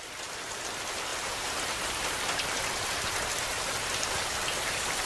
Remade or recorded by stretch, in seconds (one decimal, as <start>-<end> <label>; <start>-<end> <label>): 0.0-1.1 recorded; 1.1-2.0 remade; 2.0-5.1 recorded